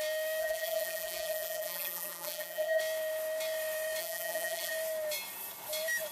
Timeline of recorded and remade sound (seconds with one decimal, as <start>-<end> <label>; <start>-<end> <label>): 0.0-0.4 recorded; 0.4-2.8 remade; 2.8-4.0 recorded; 4.0-4.7 remade; 4.7-6.1 recorded